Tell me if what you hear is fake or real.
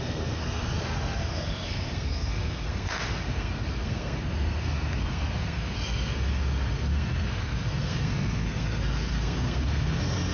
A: fake